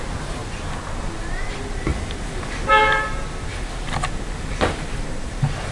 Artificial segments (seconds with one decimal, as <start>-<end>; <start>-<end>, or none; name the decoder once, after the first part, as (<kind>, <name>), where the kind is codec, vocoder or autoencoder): 0.0-0.4 (vocoder, BigVGAN v2); 1.0-1.9; 2.7-3.5; 5.0-5.7

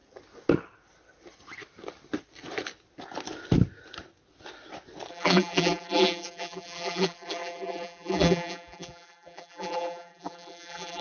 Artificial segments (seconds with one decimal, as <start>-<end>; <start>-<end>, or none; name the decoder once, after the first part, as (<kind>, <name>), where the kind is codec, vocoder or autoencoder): 5.1-11.0 (vocoder, BigVGAN v2)

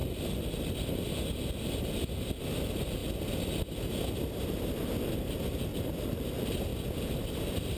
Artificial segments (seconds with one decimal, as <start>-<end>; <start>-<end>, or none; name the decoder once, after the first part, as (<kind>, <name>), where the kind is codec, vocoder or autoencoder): 5.7-6.3 (vocoder, BigVGAN v2)

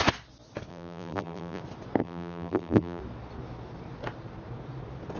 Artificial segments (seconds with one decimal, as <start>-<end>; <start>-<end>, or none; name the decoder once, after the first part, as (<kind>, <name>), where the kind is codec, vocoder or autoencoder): 0.7-1.6 (vocoder, BigVGAN v2); 2.0-3.0

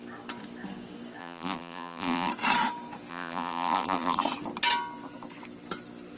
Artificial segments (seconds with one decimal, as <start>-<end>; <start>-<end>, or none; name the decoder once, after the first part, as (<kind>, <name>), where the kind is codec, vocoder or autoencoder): 1.2-2.3 (vocoder, BigVGAN v2); 3.1-4.2

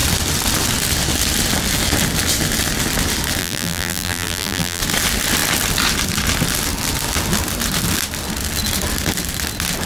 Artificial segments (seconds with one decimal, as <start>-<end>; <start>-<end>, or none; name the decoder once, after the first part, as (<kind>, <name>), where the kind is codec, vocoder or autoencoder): 3.4-4.8 (vocoder, BigVGAN v2)

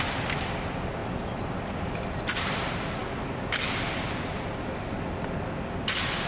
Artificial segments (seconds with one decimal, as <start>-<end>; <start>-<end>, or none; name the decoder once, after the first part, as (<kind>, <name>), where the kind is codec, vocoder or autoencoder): none

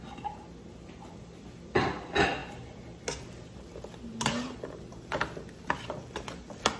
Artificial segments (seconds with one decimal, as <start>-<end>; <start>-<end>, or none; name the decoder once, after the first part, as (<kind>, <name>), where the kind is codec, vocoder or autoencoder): none